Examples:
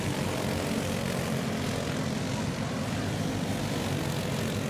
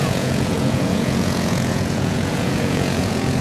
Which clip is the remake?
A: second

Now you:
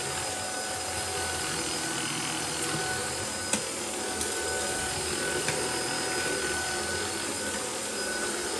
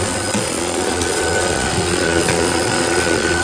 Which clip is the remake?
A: second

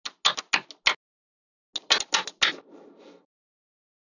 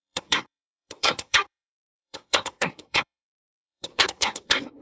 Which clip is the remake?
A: second